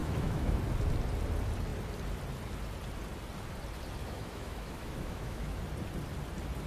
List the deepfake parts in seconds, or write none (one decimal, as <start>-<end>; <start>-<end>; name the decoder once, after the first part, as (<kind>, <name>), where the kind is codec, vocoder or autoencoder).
0.0-0.6 (autoencoder, DAC-VAE); 4.0-5.6